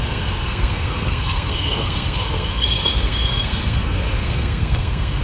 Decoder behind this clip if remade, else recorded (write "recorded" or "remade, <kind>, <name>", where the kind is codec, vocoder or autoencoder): remade, codec, SNAC